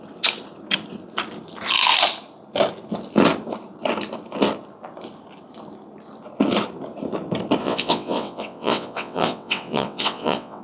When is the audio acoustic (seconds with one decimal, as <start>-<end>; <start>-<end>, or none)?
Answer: 0.0-7.6